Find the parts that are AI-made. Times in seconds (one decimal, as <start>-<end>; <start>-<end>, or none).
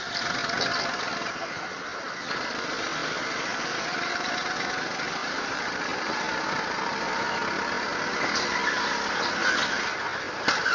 5.2-5.8